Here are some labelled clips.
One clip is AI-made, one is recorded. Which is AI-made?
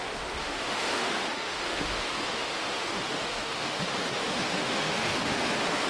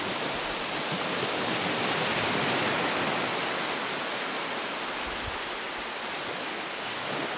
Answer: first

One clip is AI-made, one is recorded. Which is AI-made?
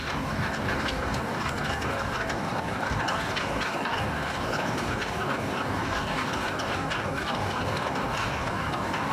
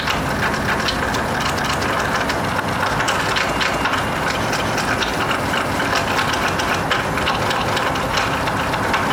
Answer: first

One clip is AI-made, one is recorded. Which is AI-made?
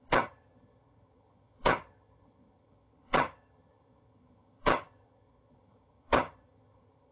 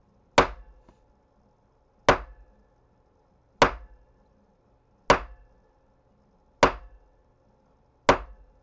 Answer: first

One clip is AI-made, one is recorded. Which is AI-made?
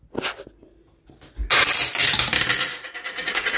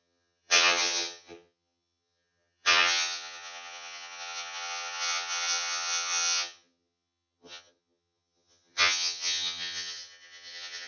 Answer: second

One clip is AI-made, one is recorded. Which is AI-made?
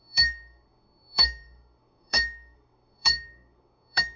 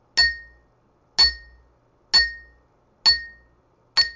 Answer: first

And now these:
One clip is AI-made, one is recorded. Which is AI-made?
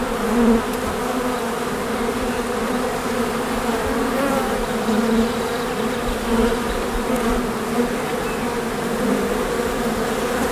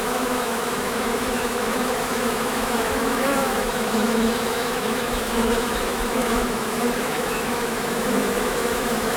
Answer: second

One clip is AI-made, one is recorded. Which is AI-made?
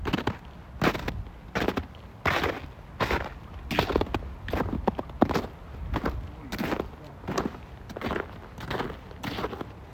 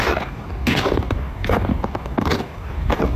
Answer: second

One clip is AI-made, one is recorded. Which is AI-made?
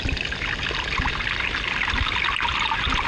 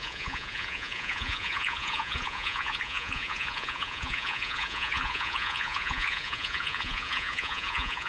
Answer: second